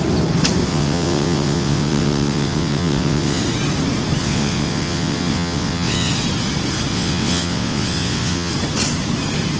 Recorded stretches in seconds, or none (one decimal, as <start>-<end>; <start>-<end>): 0.0-0.7; 3.4-4.2; 6.1-6.9; 8.5-9.6